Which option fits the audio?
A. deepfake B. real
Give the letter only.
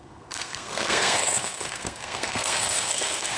A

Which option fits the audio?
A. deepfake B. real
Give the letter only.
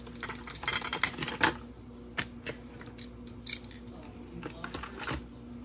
B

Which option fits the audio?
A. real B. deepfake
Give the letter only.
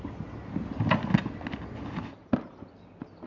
A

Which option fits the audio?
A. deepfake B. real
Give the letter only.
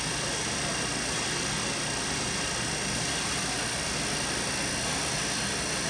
B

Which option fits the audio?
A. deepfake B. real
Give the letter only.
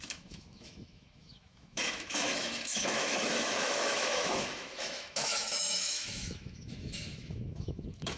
A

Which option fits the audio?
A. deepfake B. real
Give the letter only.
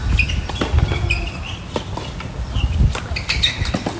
B